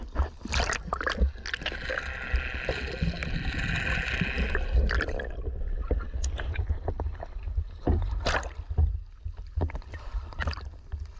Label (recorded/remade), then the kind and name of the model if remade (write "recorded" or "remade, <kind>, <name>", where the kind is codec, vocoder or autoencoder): recorded